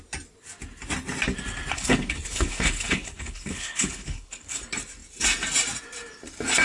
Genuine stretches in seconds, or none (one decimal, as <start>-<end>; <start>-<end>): 0.0-1.7; 4.6-6.6